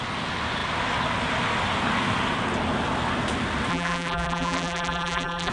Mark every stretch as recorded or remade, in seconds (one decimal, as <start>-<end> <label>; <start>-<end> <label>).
0.0-3.7 recorded; 3.7-5.5 remade